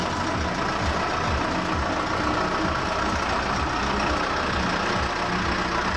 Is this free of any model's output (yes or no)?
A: yes